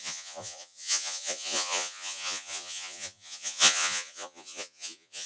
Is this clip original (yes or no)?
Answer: no